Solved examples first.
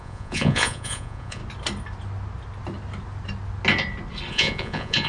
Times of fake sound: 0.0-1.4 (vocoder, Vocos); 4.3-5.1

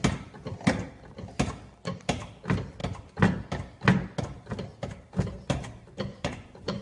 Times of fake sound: 6.1-6.8 (vocoder, Vocos)

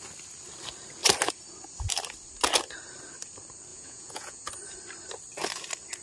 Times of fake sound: 3.7-4.5 (vocoder, Vocos)

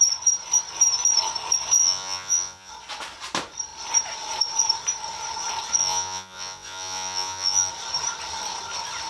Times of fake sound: 1.8-2.7 (vocoder, Vocos); 5.8-7.7

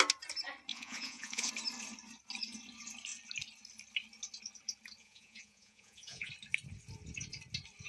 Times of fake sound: 0.7-1.5 (vocoder, Vocos); 5.0-6.3

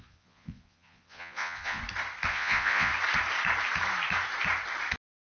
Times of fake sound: 0.0-1.8 (vocoder, Vocos); 2.3-2.9

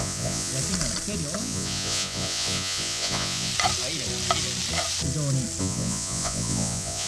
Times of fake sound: 0.0-0.5 (vocoder, Vocos); 1.4-3.5; 5.6-7.1

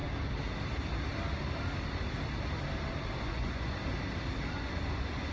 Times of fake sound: 3.2-3.8 (vocoder, Vocos); 4.5-5.3